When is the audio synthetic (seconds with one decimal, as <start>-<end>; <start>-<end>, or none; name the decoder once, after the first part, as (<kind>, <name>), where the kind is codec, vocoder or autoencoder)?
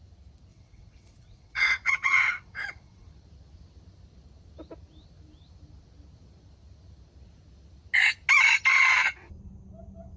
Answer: 0.5-3.1 (vocoder, WaveNeXt); 8.7-9.3